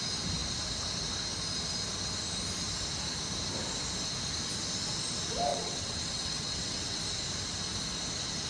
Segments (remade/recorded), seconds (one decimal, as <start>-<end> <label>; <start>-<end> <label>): 0.0-5.5 recorded; 5.5-7.0 remade; 7.0-8.5 recorded